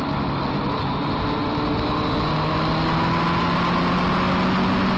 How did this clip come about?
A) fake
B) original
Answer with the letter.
B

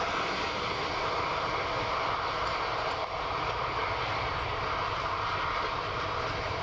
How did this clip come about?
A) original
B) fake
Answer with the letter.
A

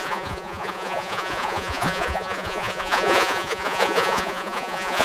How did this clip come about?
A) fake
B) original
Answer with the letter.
A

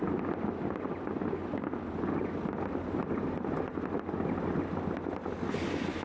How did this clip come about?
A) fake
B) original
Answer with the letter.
B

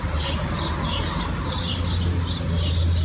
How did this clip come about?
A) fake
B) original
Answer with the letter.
B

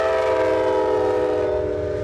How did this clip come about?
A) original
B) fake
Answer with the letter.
A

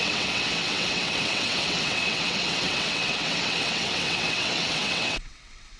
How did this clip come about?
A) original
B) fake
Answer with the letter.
B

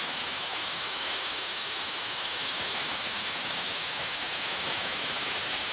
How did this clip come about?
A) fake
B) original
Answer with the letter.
A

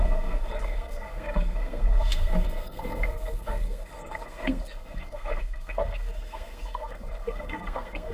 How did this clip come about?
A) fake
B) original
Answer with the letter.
A